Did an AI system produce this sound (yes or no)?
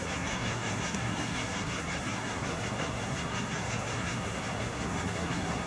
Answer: yes